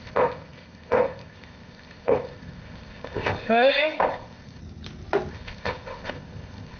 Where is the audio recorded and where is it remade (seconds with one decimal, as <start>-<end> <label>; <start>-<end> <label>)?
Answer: 0.0-4.6 remade; 4.6-5.3 recorded; 5.3-6.8 remade

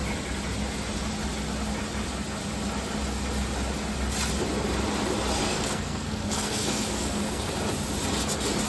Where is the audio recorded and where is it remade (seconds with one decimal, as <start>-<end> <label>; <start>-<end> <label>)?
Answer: 0.0-5.4 recorded; 5.4-7.5 remade; 7.5-8.7 recorded

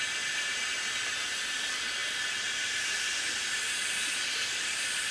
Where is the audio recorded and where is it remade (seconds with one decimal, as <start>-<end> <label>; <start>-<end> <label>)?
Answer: 0.0-5.1 recorded

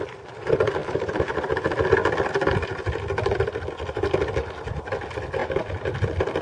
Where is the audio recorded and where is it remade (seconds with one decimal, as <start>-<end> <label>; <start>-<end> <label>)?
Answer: 0.0-6.4 recorded